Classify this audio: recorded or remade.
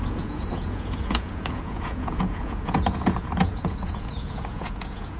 remade